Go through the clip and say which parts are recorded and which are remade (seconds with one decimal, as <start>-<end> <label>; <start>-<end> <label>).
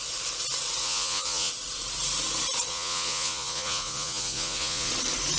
0.0-0.8 recorded; 0.8-1.5 remade; 1.5-2.7 recorded; 2.7-4.9 remade; 4.9-5.4 recorded